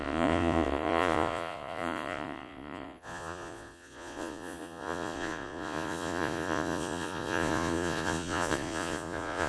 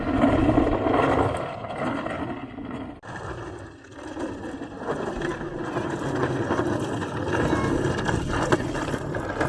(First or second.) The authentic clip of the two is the second